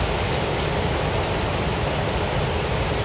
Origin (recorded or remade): recorded